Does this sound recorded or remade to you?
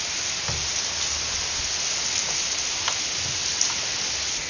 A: recorded